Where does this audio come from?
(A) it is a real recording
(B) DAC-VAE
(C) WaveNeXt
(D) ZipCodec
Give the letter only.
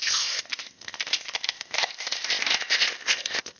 D